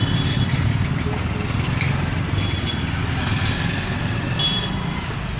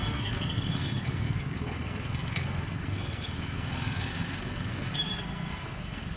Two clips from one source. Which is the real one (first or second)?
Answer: first